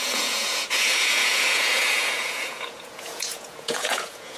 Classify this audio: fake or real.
fake